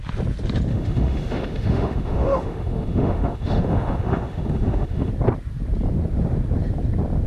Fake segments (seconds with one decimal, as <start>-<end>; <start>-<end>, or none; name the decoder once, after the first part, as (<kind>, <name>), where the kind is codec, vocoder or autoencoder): 0.7-5.1 (autoencoder, DAC-VAE)